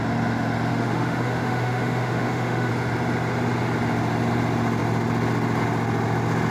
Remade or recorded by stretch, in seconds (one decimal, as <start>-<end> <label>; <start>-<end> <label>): 0.0-0.7 recorded; 0.7-2.7 remade; 2.7-6.5 recorded